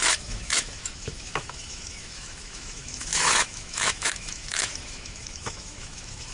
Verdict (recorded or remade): remade